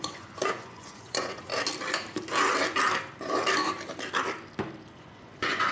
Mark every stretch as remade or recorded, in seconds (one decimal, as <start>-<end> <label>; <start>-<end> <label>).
0.0-1.5 remade; 1.5-4.9 recorded; 4.9-5.7 remade